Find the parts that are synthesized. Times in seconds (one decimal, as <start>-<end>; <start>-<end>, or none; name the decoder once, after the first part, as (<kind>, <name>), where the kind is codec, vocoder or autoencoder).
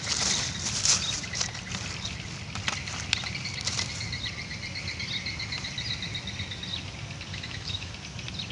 7.3-7.9 (autoencoder, DAC-VAE)